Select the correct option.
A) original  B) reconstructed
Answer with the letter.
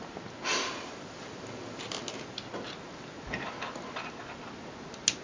A